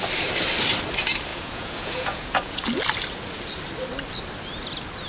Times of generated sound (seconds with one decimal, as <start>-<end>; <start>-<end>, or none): 1.3-2.6